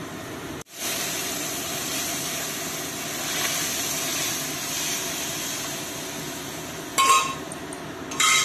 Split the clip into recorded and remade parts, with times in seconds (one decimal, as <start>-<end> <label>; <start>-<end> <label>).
0.0-2.4 remade; 2.4-8.4 recorded